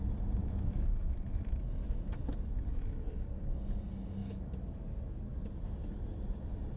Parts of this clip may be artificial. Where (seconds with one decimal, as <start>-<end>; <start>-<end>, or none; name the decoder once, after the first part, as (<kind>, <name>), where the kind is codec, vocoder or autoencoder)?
0.4-1.4 (autoencoder, DAC-VAE); 1.8-2.8; 4.2-4.7